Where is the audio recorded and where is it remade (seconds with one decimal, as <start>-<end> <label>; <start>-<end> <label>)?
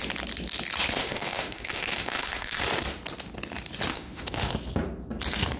0.0-0.9 recorded; 0.9-2.6 remade; 2.6-3.9 recorded; 3.9-4.5 remade; 4.5-5.6 recorded